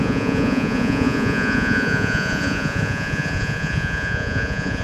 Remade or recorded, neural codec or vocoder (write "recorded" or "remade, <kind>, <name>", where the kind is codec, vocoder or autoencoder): remade, vocoder, Vocos